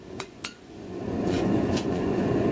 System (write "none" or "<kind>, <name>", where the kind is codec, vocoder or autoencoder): vocoder, Vocos